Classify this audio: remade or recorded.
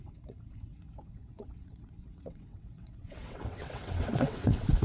remade